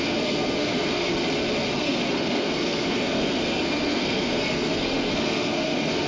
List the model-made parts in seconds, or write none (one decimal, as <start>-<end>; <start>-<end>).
0.0-1.1; 1.7-6.1